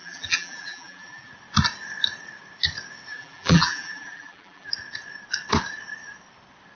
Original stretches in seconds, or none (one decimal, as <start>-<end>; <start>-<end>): 1.3-3.1; 4.7-6.8